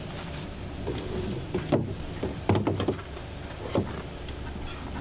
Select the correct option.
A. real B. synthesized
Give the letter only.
A